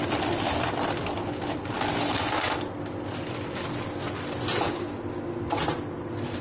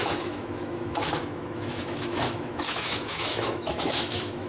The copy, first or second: second